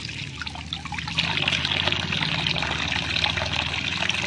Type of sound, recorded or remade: recorded